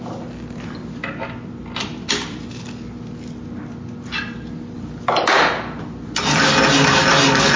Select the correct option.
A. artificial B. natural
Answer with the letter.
B